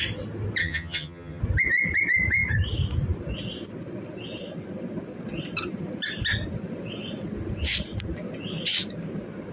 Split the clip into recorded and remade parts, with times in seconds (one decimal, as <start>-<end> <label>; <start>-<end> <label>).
0.0-0.6 recorded; 0.6-1.4 remade; 1.4-9.5 recorded